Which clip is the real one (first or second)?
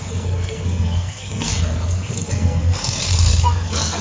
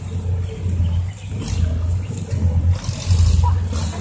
second